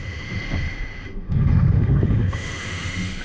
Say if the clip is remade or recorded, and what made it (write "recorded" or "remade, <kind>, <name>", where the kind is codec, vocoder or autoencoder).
remade, autoencoder, DAC-VAE